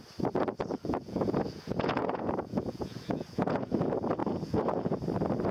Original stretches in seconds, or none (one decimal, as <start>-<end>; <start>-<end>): 0.0-0.6; 3.8-4.2; 5.0-5.5